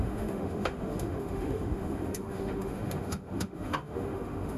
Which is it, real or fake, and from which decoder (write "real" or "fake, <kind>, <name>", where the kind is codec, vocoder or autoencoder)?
fake, autoencoder, DAC-VAE